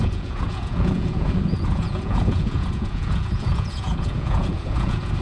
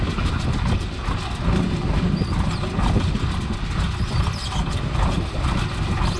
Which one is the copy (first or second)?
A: first